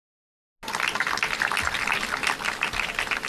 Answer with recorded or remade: recorded